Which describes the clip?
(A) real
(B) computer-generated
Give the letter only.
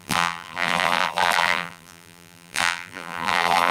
B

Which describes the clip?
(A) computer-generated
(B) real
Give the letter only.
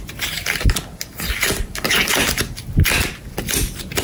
B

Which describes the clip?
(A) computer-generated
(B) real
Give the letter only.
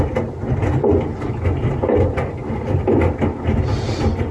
B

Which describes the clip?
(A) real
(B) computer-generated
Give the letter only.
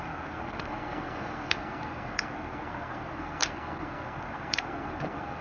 B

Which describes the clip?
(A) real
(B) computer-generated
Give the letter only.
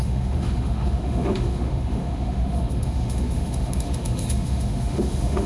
B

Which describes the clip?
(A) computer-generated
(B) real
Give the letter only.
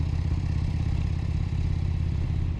A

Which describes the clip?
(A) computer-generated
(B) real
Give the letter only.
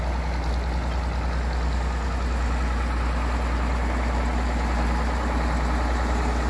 B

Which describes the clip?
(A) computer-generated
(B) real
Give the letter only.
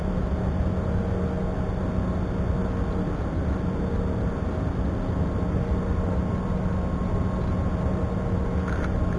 B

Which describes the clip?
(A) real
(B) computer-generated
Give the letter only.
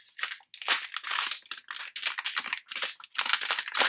A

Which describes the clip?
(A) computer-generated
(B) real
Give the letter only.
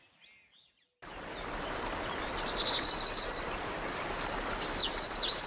B